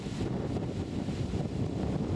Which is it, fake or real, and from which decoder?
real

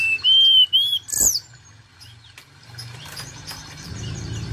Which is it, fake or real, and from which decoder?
real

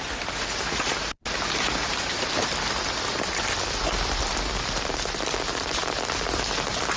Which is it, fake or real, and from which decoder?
real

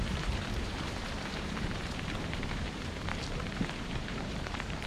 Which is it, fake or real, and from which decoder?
fake, vocoder, BigVGAN v2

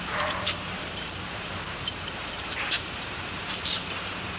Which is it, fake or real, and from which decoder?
fake, vocoder, BigVGAN v2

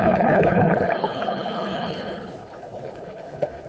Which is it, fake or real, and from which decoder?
fake, codec, HILCodec